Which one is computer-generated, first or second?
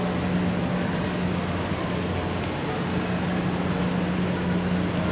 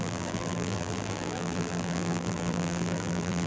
second